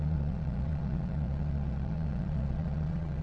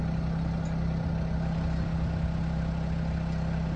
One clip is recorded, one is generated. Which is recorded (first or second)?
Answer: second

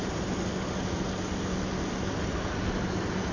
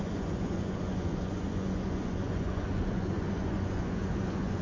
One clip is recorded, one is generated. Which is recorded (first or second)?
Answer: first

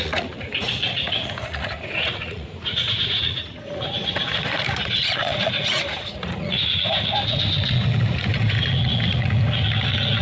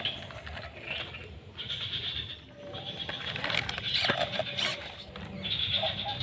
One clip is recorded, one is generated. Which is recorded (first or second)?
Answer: second